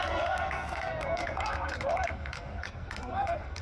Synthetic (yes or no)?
yes